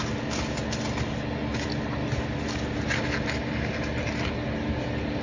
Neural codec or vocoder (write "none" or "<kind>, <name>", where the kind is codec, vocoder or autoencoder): none